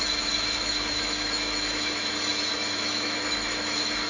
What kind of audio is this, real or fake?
fake